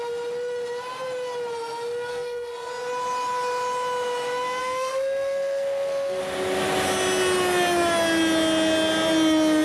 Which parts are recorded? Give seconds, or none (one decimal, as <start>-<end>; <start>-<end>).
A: 0.0-2.1; 2.7-4.6; 6.2-9.6

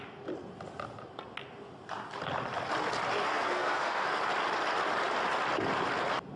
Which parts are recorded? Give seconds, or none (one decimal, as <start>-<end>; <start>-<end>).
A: 0.0-3.2; 4.2-6.4

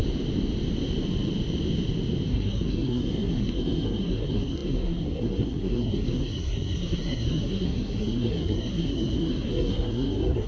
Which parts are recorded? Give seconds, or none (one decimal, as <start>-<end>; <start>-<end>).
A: 0.0-2.3

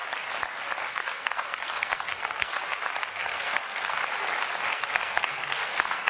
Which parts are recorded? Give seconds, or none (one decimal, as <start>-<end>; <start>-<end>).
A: 0.0-0.9; 2.5-3.1; 4.0-4.7

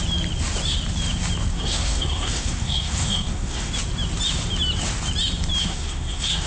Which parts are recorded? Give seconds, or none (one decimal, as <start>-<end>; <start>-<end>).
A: 0.0-1.5; 3.7-5.6

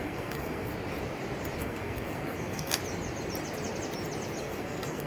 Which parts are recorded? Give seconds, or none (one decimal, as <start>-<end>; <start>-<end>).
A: 0.7-1.6; 2.8-4.4

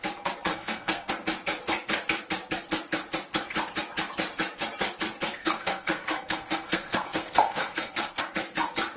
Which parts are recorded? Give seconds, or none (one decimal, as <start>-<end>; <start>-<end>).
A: 0.0-0.5; 1.1-5.4; 8.2-9.0